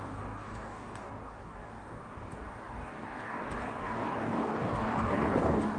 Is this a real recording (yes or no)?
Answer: no